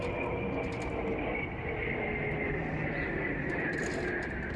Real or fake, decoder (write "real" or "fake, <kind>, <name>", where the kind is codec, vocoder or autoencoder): real